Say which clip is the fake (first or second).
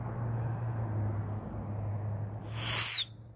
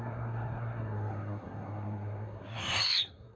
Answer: second